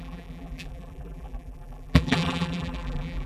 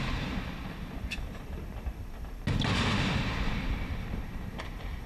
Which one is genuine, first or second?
second